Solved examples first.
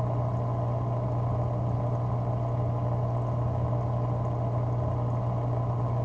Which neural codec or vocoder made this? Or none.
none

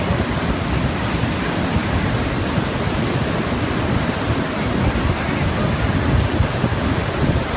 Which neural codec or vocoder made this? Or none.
none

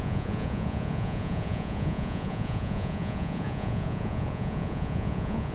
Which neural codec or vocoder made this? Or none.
vocoder, Vocos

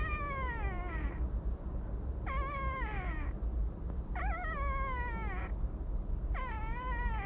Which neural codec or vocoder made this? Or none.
none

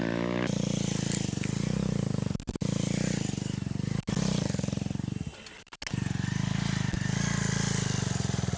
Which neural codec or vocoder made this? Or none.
none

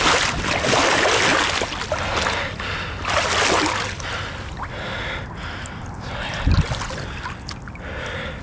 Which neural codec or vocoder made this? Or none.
none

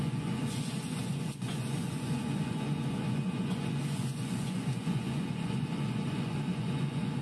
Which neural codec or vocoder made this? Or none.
vocoder, Vocos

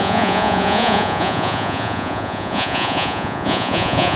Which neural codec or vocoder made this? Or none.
vocoder, Vocos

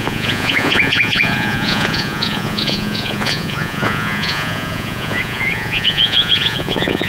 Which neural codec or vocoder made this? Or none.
vocoder, Vocos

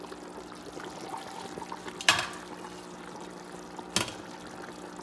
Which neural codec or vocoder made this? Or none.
none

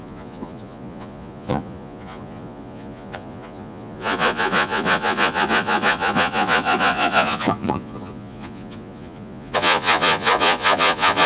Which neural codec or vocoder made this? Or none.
vocoder, Vocos